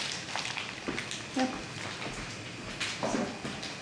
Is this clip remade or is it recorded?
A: recorded